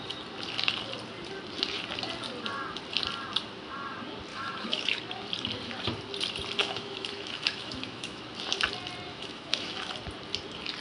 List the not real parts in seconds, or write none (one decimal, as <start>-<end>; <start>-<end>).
4.3-5.0; 6.6-8.2; 9.1-9.9